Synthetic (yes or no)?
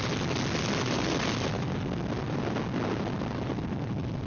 no